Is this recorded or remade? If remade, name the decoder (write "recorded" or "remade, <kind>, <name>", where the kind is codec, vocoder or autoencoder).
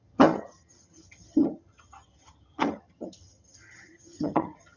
remade, vocoder, HiFi-GAN